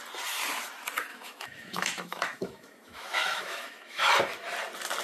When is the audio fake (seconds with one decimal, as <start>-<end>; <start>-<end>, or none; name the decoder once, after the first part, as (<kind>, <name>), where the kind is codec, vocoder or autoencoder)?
1.1-4.1 (autoencoder, DAC-VAE)